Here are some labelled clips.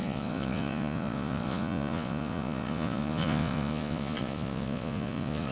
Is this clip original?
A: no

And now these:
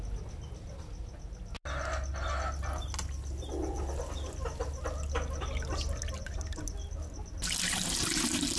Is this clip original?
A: yes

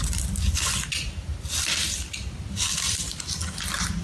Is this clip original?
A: yes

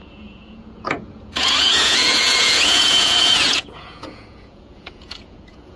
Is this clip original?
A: no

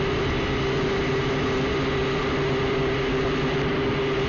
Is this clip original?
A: yes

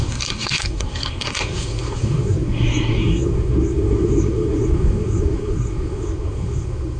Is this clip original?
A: no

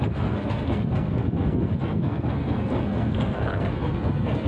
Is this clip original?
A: no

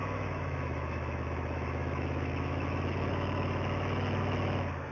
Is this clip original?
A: no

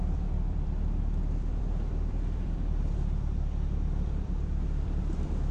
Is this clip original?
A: no